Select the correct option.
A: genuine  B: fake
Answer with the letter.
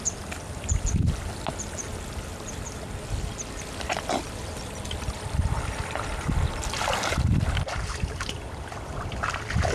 A